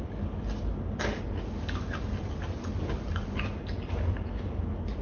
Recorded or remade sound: recorded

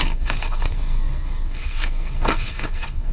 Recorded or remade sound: remade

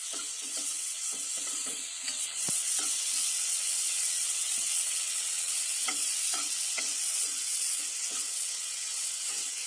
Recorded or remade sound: remade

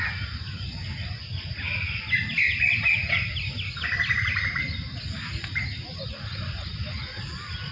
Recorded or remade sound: recorded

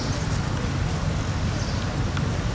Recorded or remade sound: recorded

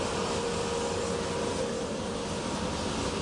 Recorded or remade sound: recorded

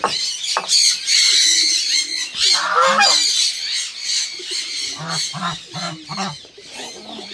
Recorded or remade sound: recorded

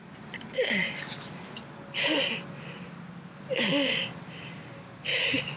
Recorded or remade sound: recorded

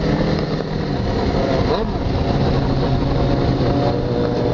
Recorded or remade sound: recorded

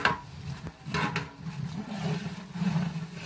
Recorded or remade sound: recorded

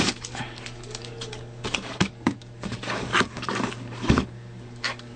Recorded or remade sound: remade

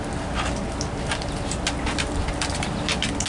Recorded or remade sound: recorded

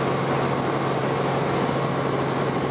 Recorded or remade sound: recorded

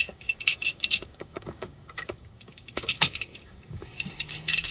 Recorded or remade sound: remade